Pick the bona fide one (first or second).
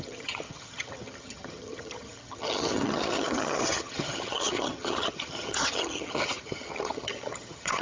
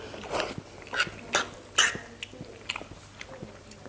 second